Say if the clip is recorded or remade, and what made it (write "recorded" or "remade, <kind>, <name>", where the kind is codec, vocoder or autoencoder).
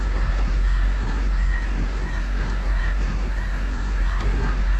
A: remade, codec, SNAC